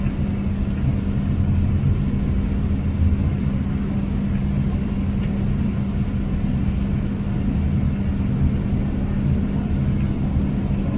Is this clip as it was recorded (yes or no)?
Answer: yes